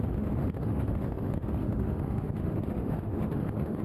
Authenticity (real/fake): fake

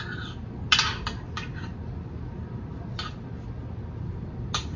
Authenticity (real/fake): real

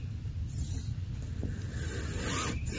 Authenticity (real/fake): real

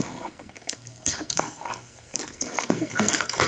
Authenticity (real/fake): fake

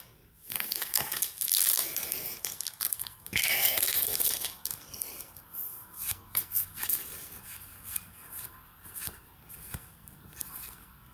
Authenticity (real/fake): fake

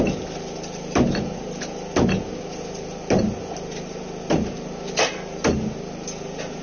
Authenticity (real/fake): real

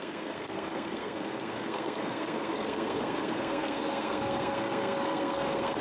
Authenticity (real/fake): fake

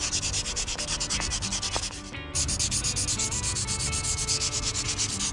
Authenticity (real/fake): real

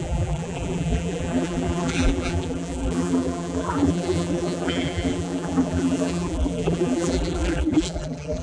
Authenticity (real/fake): fake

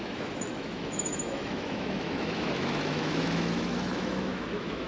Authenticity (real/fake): fake